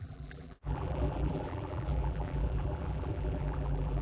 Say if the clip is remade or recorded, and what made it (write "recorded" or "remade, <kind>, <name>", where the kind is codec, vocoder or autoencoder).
remade, vocoder, BigVGAN v2